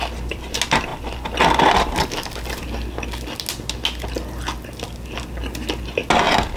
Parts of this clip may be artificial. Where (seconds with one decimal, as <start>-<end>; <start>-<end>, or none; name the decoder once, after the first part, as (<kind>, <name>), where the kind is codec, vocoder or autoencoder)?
none